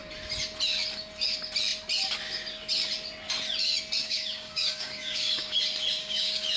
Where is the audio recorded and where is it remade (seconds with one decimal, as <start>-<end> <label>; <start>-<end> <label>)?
0.0-4.0 recorded; 4.0-5.6 remade; 5.6-6.0 recorded; 6.0-6.6 remade